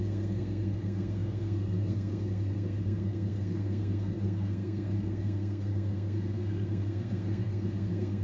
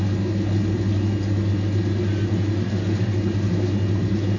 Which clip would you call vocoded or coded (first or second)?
first